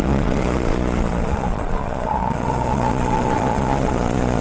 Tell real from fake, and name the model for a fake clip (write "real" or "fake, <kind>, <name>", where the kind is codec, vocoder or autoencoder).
fake, vocoder, Vocos